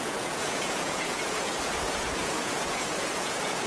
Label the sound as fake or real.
fake